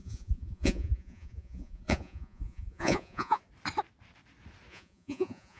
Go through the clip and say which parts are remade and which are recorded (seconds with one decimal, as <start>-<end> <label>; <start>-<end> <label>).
0.0-3.4 remade; 3.4-4.7 recorded; 4.7-5.6 remade